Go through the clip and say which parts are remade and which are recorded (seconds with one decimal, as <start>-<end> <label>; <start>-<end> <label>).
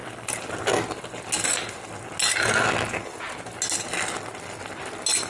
0.0-5.3 recorded